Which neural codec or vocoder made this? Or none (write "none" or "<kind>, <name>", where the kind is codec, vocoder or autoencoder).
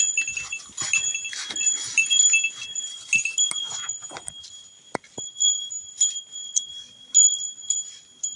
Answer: none